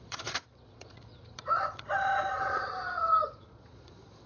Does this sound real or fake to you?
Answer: fake